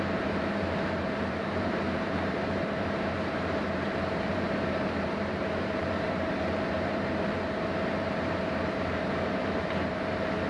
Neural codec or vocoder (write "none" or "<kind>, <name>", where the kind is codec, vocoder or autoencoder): vocoder, BigVGAN v2